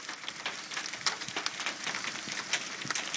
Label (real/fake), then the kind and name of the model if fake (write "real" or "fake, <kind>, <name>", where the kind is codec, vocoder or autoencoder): real